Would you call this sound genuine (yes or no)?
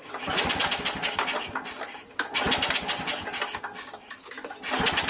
yes